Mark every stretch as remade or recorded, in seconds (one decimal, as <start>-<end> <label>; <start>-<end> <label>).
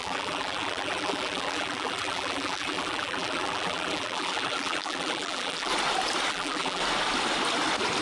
0.0-5.7 remade; 5.7-6.3 recorded; 6.3-6.8 remade; 6.8-8.0 recorded